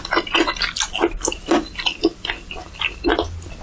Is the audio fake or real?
real